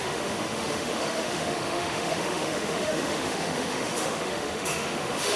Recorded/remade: remade